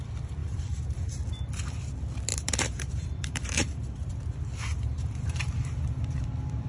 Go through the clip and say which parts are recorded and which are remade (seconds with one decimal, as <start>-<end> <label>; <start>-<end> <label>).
0.0-0.4 recorded; 0.4-1.3 remade; 1.3-2.3 recorded; 2.3-4.1 remade; 4.1-4.7 recorded; 4.7-5.5 remade; 5.5-6.7 recorded